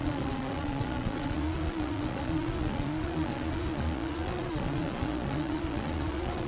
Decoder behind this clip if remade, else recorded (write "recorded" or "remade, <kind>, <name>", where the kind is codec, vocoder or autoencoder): remade, vocoder, Vocos